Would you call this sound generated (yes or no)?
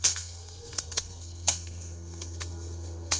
yes